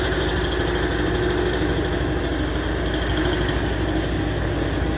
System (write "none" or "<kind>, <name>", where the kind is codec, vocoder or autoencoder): none